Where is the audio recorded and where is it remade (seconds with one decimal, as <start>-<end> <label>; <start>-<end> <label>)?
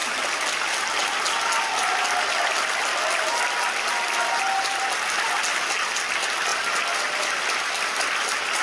0.0-8.6 recorded